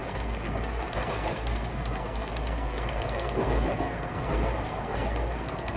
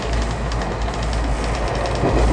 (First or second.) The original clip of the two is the second